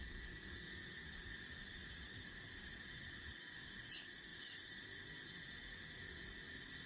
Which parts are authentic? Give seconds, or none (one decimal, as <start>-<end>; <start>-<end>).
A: 0.0-6.9